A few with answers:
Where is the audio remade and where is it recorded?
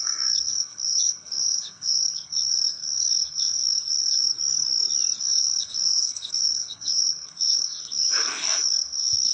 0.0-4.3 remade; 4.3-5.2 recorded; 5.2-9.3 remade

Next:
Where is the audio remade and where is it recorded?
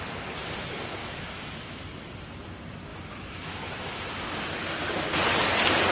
0.0-1.0 recorded; 1.0-1.8 remade; 1.8-2.9 recorded; 2.9-4.1 remade; 4.1-5.9 recorded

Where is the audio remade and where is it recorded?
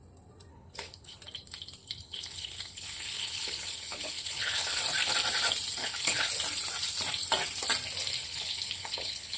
0.0-0.5 recorded; 0.5-1.2 remade; 1.2-1.8 recorded; 1.8-4.8 remade; 4.8-5.8 recorded; 5.8-6.3 remade; 6.3-8.2 recorded; 8.2-9.4 remade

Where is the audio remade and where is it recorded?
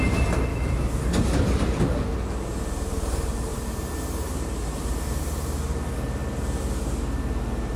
0.0-0.5 recorded; 0.5-1.0 remade; 1.0-7.8 recorded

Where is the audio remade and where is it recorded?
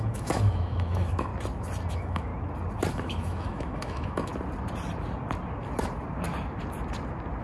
0.0-1.3 remade; 1.3-1.9 recorded; 1.9-2.3 remade; 2.3-2.9 recorded; 2.9-4.3 remade; 4.3-7.4 recorded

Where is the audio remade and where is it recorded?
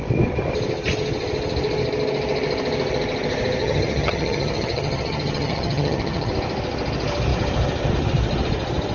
0.0-3.6 recorded; 3.6-6.3 remade; 6.3-8.9 recorded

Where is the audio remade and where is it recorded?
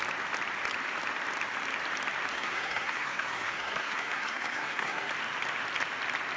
0.0-2.3 recorded; 2.3-5.1 remade; 5.1-6.4 recorded